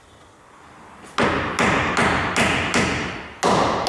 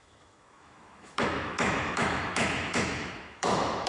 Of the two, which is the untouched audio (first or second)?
first